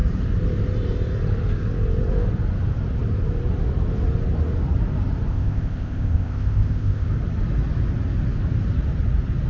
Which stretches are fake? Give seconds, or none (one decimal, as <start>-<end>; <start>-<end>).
5.3-7.1